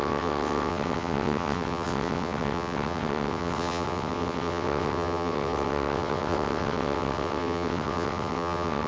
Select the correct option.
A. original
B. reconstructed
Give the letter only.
B